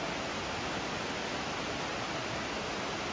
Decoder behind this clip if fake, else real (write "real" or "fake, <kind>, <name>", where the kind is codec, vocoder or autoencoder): real